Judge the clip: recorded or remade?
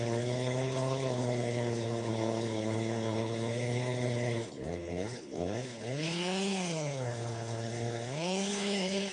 remade